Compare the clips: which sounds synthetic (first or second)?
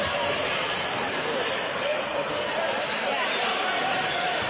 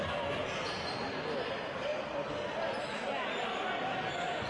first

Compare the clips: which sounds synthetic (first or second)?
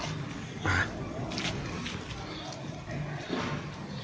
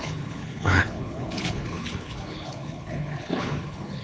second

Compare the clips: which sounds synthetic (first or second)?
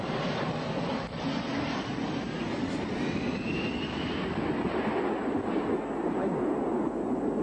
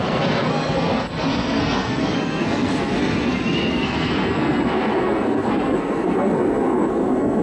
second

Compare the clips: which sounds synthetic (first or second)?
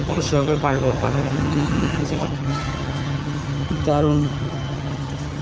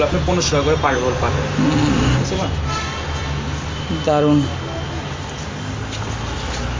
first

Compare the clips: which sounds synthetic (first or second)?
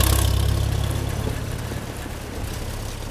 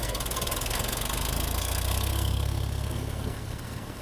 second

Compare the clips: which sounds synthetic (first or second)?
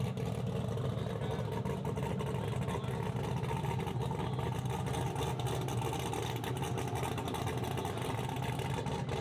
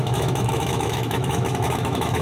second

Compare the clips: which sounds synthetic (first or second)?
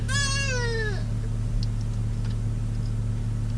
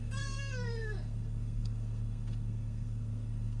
second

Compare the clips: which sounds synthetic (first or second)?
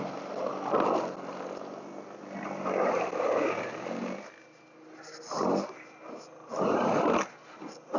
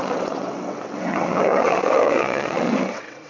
second